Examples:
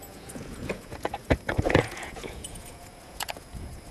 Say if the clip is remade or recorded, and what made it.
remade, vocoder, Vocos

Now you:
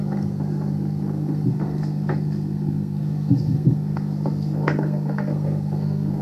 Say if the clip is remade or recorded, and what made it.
remade, codec, SNAC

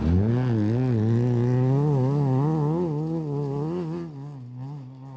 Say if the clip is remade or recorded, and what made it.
recorded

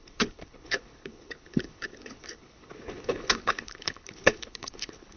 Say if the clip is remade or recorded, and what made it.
remade, codec, HILCodec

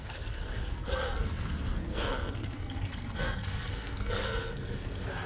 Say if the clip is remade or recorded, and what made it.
remade, codec, SNAC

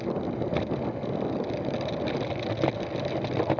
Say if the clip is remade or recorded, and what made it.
recorded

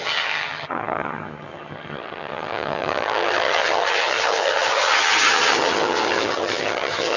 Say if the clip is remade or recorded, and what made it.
remade, vocoder, HiFi-GAN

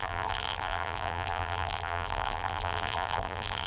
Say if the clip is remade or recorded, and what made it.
remade, vocoder, BigVGAN v2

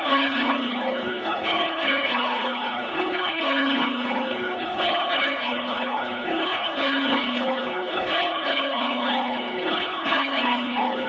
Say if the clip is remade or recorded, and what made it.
remade, codec, HILCodec